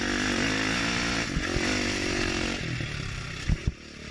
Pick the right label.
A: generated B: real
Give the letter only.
B